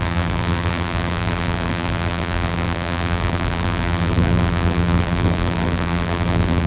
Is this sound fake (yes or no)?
yes